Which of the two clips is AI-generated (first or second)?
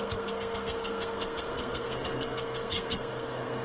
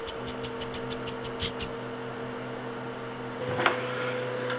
first